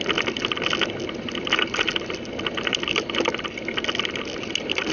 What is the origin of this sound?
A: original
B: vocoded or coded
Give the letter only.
A